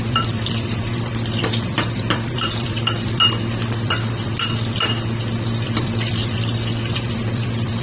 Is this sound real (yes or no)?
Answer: no